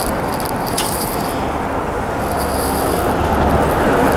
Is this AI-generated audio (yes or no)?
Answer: no